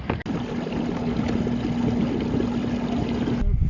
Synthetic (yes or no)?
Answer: no